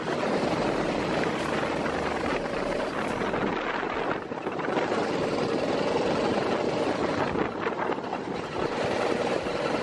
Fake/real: real